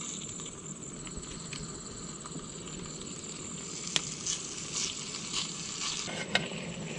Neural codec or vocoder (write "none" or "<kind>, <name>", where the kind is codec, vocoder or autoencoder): none